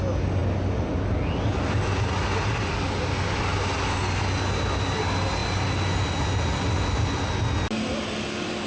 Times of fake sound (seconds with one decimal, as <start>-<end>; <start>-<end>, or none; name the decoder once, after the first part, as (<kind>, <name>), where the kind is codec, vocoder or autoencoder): none